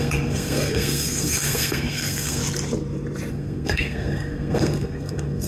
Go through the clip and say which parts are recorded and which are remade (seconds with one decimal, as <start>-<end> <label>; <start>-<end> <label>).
0.0-2.4 remade; 2.4-3.3 recorded; 3.3-5.5 remade